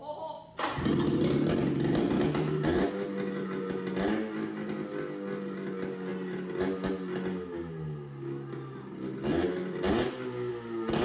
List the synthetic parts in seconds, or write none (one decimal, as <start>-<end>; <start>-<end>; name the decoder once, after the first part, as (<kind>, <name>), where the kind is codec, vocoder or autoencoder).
9.6-10.5 (vocoder, BigVGAN v2)